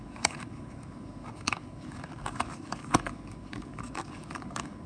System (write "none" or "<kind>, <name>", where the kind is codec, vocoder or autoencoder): codec, DAC